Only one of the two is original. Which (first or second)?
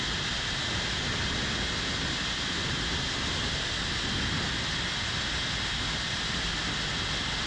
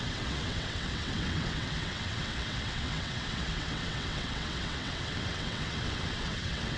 first